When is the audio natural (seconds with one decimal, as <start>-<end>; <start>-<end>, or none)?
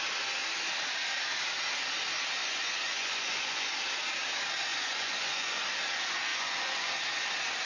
0.0-2.4; 3.7-4.7; 5.6-6.3; 6.9-7.7